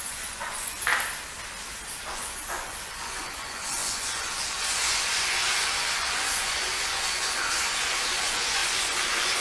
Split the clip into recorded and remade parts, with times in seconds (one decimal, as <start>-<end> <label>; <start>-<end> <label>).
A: 0.0-0.9 remade; 0.9-2.1 recorded; 2.1-9.4 remade